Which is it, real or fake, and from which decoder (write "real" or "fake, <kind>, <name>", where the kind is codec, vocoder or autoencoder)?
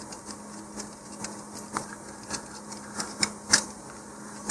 real